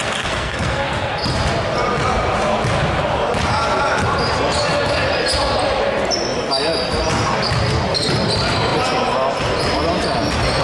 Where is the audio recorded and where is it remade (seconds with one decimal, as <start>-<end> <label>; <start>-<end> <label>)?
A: 0.0-1.1 remade; 1.1-10.6 recorded